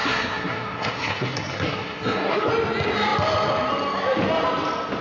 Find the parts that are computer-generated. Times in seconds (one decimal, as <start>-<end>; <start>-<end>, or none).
0.0-2.5